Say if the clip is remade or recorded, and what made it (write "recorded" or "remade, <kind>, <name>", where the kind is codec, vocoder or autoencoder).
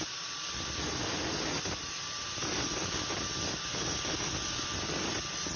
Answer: recorded